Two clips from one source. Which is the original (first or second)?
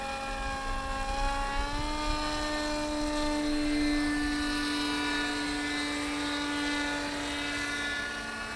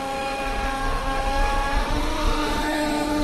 first